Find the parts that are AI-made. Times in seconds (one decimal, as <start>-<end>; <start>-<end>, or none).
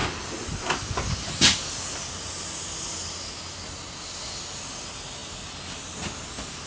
none